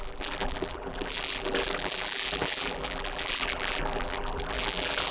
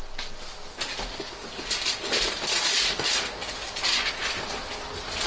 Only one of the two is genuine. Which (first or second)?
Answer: second